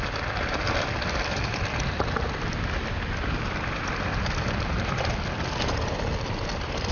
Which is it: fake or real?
real